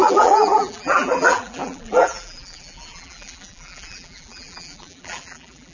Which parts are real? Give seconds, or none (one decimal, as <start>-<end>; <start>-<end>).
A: none